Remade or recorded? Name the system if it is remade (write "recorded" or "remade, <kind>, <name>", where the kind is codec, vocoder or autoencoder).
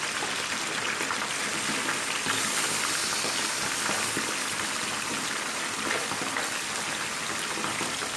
recorded